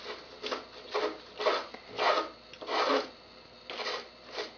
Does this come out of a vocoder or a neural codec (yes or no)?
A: no